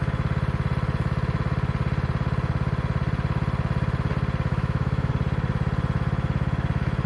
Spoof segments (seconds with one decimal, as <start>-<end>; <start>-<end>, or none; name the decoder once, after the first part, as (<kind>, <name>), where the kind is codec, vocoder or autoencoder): 4.5-5.1 (autoencoder, DAC-VAE)